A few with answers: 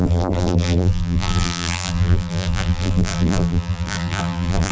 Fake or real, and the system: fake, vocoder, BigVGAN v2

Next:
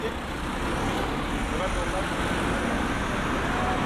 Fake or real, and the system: real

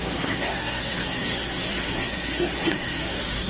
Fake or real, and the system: fake, codec, SNAC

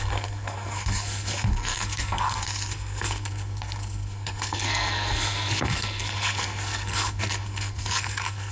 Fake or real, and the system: fake, codec, SNAC